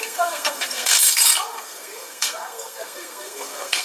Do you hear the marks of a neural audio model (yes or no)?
yes